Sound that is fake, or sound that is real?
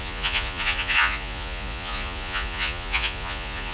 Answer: fake